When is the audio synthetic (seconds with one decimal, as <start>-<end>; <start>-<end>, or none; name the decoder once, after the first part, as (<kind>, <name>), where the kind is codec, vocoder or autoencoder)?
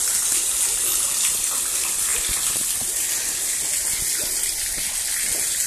none